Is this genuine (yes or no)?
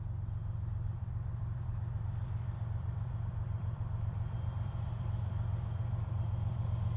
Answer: no